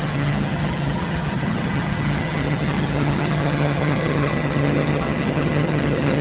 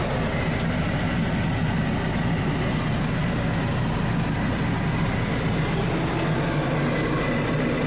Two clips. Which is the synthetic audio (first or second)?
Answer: first